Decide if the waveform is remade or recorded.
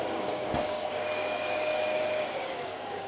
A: remade